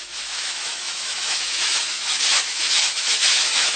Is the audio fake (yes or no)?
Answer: yes